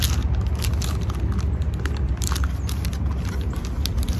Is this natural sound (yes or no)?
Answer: yes